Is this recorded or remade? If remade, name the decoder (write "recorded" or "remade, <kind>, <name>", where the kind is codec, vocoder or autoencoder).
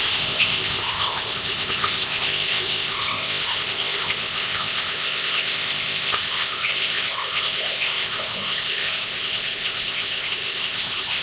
remade, codec, ZipCodec